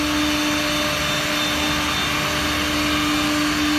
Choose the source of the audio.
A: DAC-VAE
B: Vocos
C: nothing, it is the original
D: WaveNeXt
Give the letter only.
C